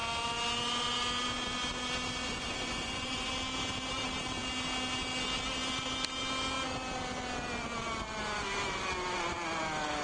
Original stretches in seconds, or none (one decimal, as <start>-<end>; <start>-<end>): 0.0-2.2; 3.3-10.0